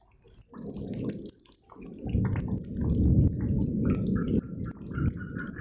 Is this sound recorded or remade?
recorded